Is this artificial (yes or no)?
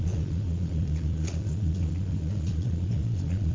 yes